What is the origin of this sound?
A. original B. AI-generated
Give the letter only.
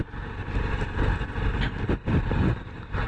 A